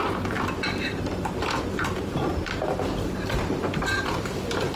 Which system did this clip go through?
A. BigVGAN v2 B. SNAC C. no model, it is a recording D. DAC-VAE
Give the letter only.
A